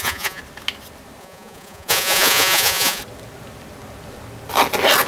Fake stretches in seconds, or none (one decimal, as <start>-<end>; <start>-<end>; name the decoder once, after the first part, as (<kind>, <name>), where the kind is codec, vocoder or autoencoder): 0.0-0.4 (vocoder, Vocos); 1.2-3.0